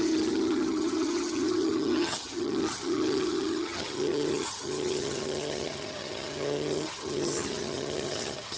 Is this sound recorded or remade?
remade